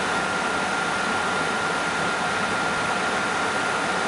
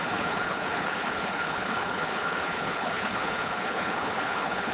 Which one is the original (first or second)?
first